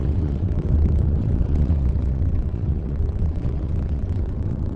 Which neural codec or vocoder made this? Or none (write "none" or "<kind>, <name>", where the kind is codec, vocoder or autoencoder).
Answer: vocoder, WaveNeXt